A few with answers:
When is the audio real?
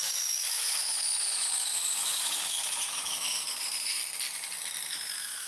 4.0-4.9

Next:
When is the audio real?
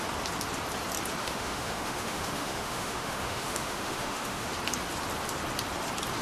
0.0-1.2; 4.5-6.2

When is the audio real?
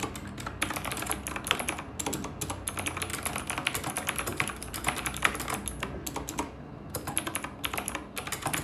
0.0-4.3; 5.3-8.6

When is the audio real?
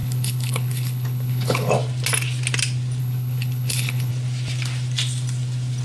1.7-3.0; 4.1-5.8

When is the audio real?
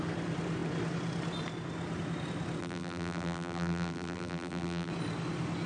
0.0-2.6; 4.9-5.7